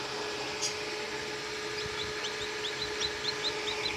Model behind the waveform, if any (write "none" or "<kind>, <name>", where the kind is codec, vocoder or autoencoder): none